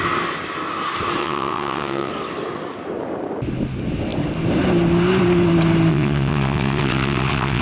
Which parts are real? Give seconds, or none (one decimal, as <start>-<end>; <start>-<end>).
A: 0.0-1.2; 2.1-5.9

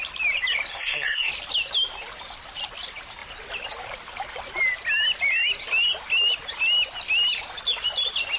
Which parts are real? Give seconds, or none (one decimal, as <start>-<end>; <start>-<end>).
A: 0.0-0.7; 1.3-8.4

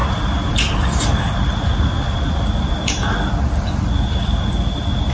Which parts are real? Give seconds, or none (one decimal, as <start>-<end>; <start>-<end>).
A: 0.0-5.1

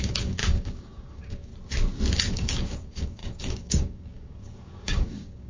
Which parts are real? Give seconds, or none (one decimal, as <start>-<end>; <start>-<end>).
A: 1.5-2.3

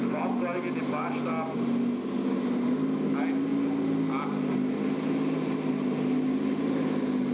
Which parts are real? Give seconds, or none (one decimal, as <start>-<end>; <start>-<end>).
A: 0.0-7.3

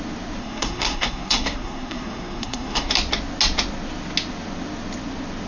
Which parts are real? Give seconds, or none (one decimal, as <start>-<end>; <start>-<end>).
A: 0.0-0.4; 2.9-5.5

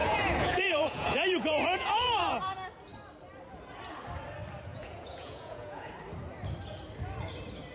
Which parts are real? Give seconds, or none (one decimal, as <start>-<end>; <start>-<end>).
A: 2.3-4.7; 5.9-7.7